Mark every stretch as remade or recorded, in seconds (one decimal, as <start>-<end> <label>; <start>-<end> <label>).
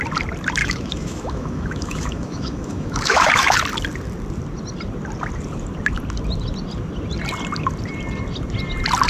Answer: 0.0-0.6 recorded; 0.6-3.6 remade; 3.6-9.1 recorded